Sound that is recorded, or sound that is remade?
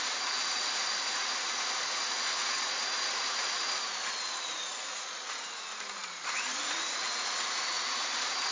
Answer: remade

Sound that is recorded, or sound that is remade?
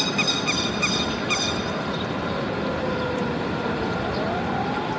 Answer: recorded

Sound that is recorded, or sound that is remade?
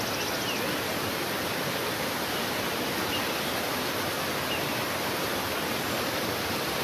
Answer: recorded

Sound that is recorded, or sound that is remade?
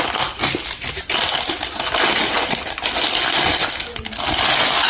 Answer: recorded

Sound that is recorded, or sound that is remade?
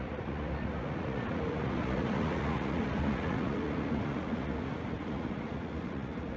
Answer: remade